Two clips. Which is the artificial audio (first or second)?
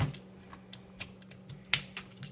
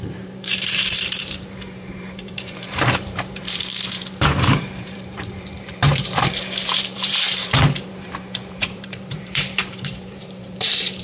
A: second